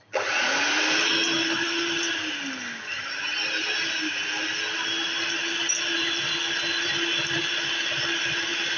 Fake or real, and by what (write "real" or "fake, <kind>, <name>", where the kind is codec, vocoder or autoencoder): fake, vocoder, BigVGAN v2